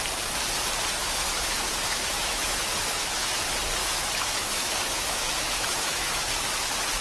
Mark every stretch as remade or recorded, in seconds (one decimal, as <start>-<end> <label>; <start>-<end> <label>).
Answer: 0.0-1.0 recorded; 1.0-3.4 remade; 3.4-3.8 recorded; 3.8-6.3 remade; 6.3-7.0 recorded

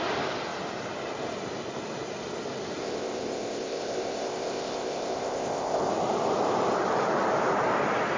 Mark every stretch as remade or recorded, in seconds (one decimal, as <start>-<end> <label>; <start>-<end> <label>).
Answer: 0.0-2.8 recorded; 2.8-5.9 remade; 5.9-8.2 recorded

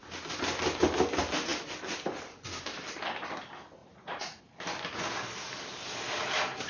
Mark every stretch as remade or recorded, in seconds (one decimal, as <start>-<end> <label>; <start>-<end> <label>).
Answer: 0.0-3.8 recorded; 3.8-4.4 remade; 4.4-6.7 recorded

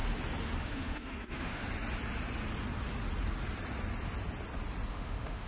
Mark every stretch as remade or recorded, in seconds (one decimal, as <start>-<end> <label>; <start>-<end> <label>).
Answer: 0.0-0.6 recorded; 0.6-1.6 remade; 1.6-4.9 recorded; 4.9-5.5 remade